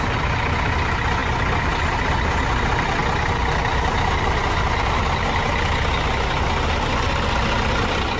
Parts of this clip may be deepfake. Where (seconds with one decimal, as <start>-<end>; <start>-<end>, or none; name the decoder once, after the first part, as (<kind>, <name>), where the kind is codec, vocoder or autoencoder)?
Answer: none